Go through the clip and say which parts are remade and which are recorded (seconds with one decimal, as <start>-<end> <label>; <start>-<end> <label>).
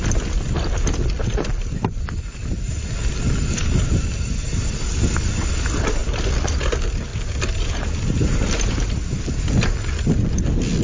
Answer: 0.0-10.8 recorded